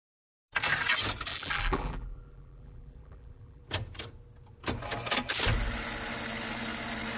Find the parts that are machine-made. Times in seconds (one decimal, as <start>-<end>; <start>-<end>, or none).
1.3-3.6